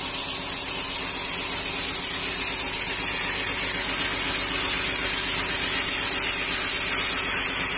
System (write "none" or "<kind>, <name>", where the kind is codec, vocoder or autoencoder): none